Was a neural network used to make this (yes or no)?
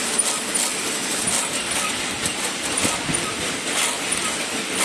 no